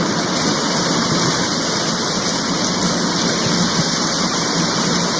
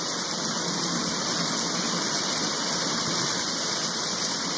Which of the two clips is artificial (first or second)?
second